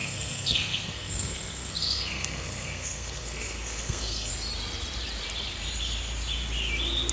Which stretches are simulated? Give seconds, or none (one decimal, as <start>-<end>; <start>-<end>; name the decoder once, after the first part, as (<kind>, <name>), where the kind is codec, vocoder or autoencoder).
0.0-4.3 (codec, SNAC)